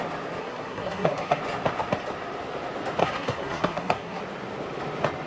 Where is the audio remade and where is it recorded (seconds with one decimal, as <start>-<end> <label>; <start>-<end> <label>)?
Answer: 0.0-0.4 recorded; 0.4-1.4 remade; 1.4-3.0 recorded; 3.0-4.2 remade; 4.2-5.3 recorded